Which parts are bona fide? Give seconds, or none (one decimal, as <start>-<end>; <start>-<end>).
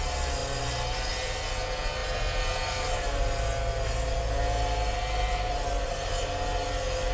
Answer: 0.0-7.1